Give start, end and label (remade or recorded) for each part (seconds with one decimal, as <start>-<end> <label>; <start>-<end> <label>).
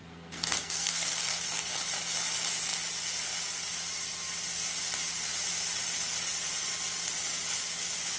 0.0-1.7 remade; 1.7-8.2 recorded